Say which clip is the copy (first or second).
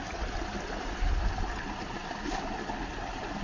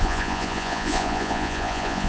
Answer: second